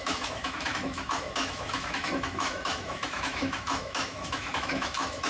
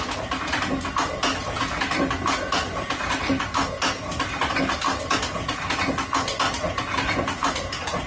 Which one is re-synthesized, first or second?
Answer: first